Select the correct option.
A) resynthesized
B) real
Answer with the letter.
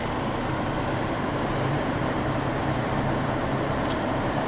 A